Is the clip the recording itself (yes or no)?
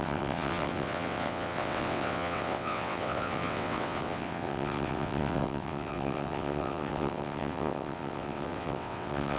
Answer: no